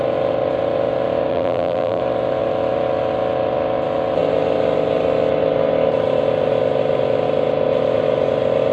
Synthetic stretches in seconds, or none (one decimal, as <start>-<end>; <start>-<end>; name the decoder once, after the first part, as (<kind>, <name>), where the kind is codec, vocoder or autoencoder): 1.3-2.0 (vocoder, BigVGAN v2)

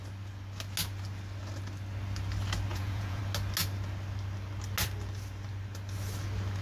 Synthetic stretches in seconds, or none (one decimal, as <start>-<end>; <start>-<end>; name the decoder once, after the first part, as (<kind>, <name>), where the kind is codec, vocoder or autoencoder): 2.7-3.2 (vocoder, Vocos)

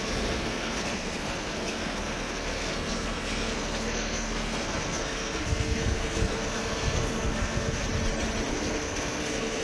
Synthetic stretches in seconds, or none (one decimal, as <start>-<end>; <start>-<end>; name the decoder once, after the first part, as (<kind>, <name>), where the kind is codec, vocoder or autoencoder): 0.0-7.8 (codec, SNAC); 8.5-9.6

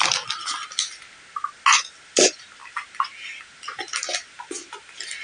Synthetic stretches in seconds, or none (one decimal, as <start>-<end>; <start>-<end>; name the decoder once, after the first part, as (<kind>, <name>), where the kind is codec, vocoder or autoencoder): none